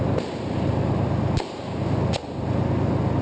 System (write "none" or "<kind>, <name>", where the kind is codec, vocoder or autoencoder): none